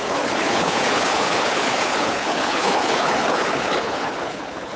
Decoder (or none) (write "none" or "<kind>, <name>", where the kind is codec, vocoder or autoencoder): codec, HILCodec